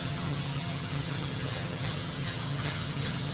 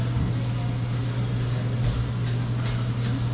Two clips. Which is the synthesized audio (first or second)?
first